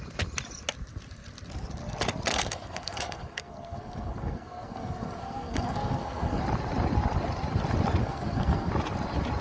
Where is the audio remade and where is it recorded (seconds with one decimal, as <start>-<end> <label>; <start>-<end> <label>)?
0.0-2.3 recorded; 2.3-6.4 remade; 6.4-8.0 recorded; 8.0-8.7 remade; 8.7-9.4 recorded